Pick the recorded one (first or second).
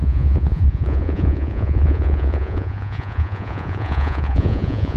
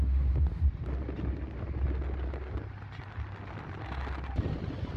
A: second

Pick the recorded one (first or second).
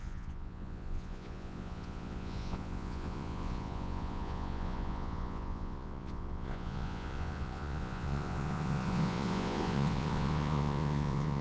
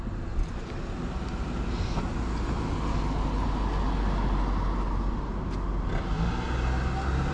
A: second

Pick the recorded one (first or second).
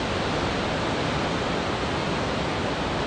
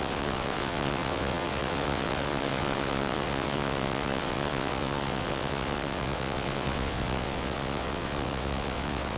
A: first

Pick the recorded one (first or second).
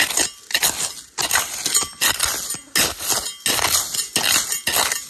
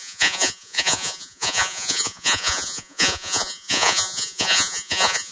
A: first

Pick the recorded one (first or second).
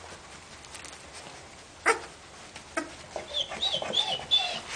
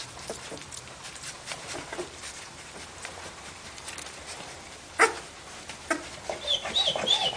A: first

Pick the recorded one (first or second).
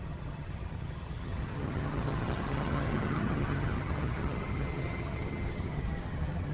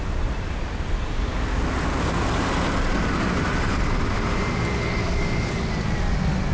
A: second